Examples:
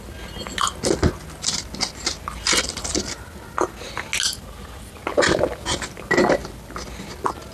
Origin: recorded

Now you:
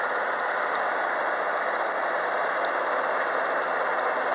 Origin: recorded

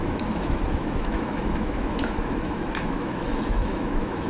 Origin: remade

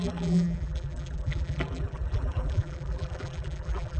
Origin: remade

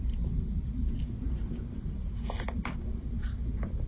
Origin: remade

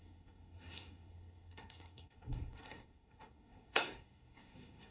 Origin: remade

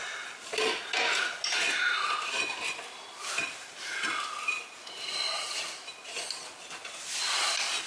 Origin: recorded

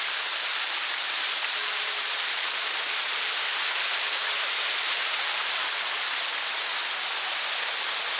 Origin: recorded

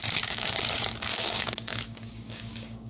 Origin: remade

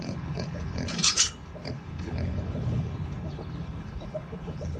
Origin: remade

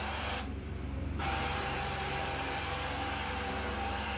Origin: remade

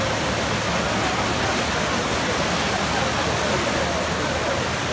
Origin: recorded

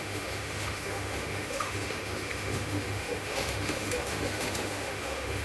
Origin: remade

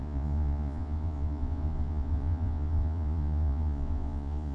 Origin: remade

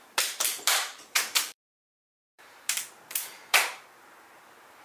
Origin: remade